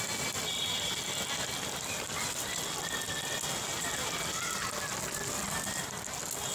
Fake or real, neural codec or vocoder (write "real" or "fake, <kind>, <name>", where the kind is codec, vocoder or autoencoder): real